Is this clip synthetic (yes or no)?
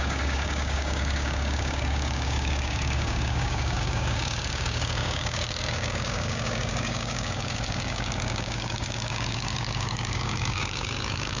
yes